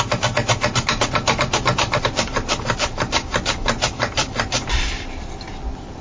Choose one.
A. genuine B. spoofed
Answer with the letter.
A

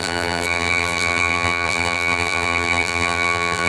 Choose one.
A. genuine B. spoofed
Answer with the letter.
B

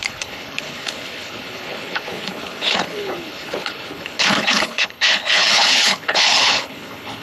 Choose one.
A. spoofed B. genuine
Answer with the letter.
A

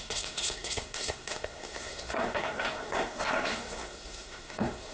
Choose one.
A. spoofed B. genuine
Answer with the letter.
A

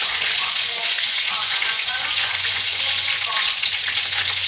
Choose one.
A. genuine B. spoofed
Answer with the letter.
B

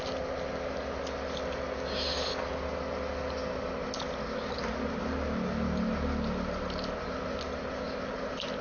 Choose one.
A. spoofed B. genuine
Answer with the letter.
B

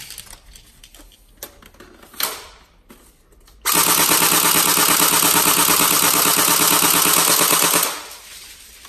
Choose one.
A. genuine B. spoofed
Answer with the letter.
A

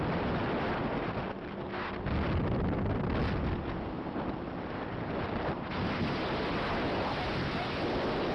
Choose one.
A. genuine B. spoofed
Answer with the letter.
A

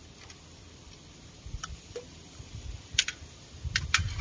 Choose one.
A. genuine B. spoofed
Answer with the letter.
B